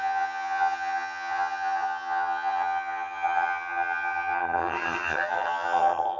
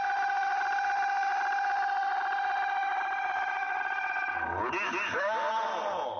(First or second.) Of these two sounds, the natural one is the second